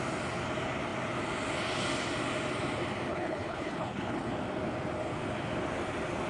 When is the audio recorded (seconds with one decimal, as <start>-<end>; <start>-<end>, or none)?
0.0-3.1; 4.3-6.3